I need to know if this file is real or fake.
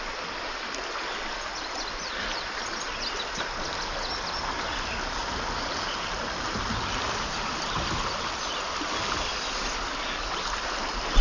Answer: real